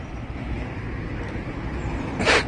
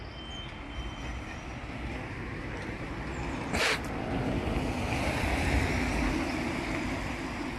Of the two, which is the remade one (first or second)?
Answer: first